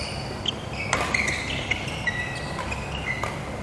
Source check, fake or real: real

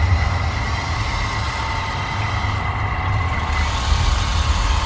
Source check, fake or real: real